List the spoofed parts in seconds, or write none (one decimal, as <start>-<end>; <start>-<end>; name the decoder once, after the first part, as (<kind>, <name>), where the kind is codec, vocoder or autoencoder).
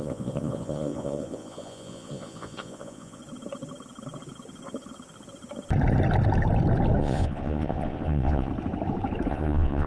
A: 0.0-3.2 (vocoder, Vocos); 7.0-8.5; 9.3-9.9